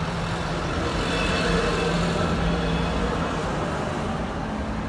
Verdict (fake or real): real